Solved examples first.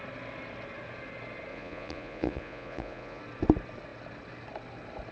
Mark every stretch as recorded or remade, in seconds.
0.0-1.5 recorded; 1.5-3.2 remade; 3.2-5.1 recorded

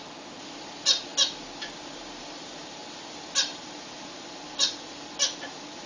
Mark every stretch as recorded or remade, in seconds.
0.0-1.1 remade; 1.1-2.2 recorded; 2.2-5.9 remade

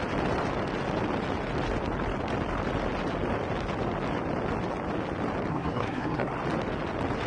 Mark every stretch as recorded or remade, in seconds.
0.0-5.5 recorded; 5.5-6.3 remade; 6.3-7.3 recorded

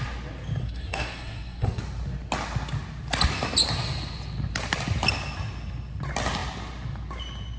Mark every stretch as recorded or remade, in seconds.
0.0-0.6 recorded; 0.6-1.8 remade; 1.8-7.6 recorded

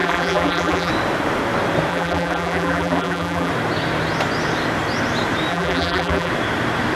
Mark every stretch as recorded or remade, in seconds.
0.0-0.9 remade; 0.9-1.9 recorded; 1.9-3.5 remade; 3.5-5.5 recorded; 5.5-6.3 remade; 6.3-7.0 recorded

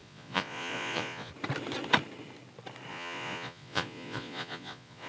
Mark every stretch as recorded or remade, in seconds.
0.0-1.3 remade; 1.3-2.9 recorded; 2.9-5.1 remade

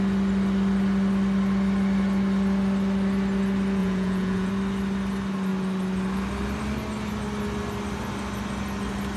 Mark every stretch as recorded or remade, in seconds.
0.0-3.8 recorded; 3.8-4.5 remade; 4.5-9.2 recorded